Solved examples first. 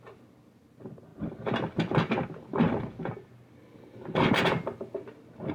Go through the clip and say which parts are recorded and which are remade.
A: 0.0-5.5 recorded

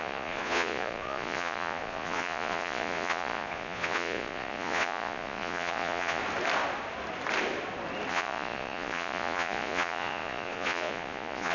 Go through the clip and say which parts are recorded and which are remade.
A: 0.0-6.2 remade; 6.2-8.1 recorded; 8.1-11.5 remade

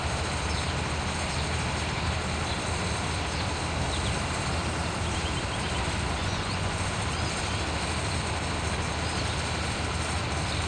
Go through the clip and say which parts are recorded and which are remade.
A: 0.0-6.2 recorded; 6.2-6.9 remade; 6.9-10.7 recorded

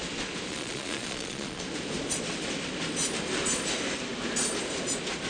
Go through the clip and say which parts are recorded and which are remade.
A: 0.0-0.5 recorded; 0.5-1.6 remade; 1.6-5.3 recorded

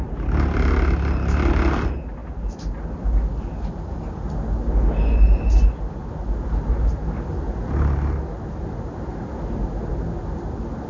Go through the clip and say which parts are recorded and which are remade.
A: 0.0-10.9 recorded

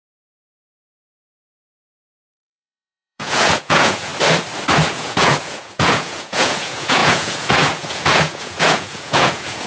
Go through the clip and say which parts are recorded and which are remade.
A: 0.0-4.1 remade; 4.1-4.9 recorded; 4.9-9.7 remade

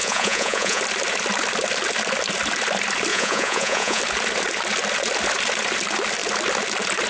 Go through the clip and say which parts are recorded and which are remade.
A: 0.0-0.8 remade; 0.8-3.1 recorded; 3.1-4.0 remade; 4.0-7.1 recorded

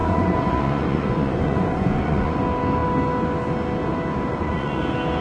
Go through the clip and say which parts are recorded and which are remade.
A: 0.0-2.4 remade; 2.4-4.3 recorded; 4.3-4.8 remade; 4.8-5.2 recorded